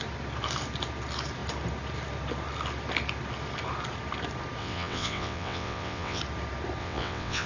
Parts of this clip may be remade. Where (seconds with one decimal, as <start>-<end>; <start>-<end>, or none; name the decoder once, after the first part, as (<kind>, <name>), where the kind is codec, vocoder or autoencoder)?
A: 4.6-6.2 (vocoder, WaveNeXt); 6.8-7.5